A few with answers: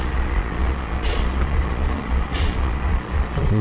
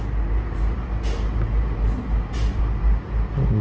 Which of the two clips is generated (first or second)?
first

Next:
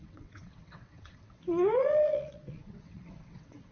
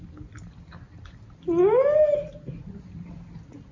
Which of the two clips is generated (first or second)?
first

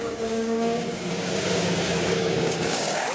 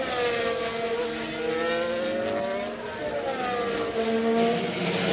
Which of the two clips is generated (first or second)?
first